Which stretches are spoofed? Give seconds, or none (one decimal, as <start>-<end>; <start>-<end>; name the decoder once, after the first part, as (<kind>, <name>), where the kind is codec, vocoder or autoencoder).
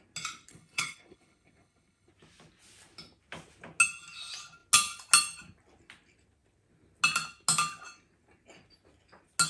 0.5-2.1 (codec, HILCodec)